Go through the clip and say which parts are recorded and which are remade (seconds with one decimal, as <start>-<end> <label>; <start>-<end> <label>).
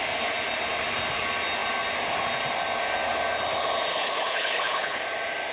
0.0-3.9 recorded; 3.9-5.0 remade; 5.0-5.5 recorded